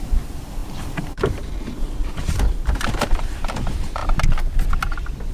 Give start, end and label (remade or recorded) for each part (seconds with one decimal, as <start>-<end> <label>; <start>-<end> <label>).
0.0-4.0 remade; 4.0-5.3 recorded

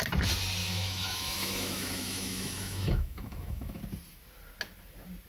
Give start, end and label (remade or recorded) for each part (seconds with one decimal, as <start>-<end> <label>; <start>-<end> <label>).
0.0-0.6 recorded; 0.6-3.8 remade; 3.8-5.3 recorded

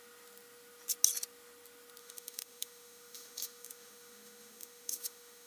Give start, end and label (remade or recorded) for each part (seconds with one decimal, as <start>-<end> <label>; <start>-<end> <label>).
0.0-2.0 recorded; 2.0-5.5 remade